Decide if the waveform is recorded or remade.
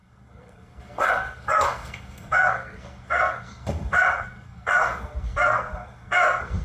remade